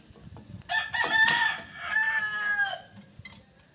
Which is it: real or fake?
real